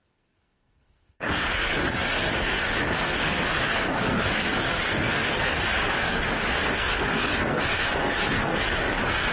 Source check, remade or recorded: remade